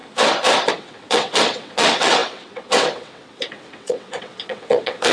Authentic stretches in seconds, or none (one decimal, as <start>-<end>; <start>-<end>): 0.0-0.7